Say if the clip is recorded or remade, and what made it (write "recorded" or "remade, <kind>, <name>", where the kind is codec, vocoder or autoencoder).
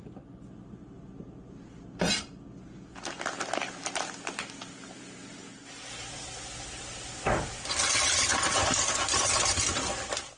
recorded